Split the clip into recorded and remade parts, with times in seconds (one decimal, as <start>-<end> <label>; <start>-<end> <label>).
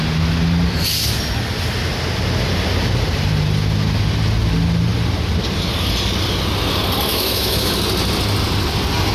0.0-7.1 recorded; 7.1-7.7 remade; 7.7-9.1 recorded